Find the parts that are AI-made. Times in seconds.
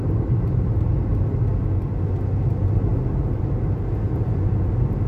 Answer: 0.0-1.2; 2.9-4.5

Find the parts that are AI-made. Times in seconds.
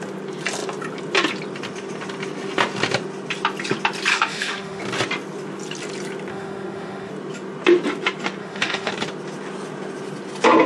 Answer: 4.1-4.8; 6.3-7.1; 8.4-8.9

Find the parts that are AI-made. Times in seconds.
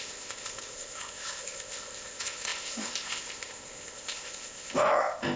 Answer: 0.0-5.4